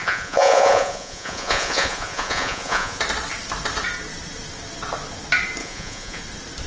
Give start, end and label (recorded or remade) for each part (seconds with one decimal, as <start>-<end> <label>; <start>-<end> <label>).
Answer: 0.0-3.0 remade; 3.0-5.6 recorded; 5.6-6.2 remade; 6.2-6.7 recorded